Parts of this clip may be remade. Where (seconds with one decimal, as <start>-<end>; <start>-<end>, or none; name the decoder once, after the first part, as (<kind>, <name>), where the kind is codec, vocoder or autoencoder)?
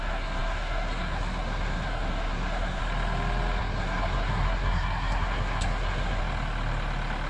0.0-2.8 (codec, SNAC); 3.6-6.2